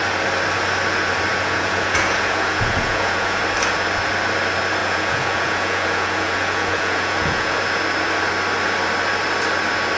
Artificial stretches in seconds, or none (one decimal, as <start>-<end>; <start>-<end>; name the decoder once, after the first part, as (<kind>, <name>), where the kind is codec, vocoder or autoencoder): 1.3-3.4 (vocoder, Vocos); 4.8-7.6